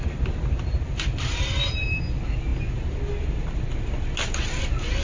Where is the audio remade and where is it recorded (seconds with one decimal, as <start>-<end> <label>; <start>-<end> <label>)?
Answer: 0.0-5.0 recorded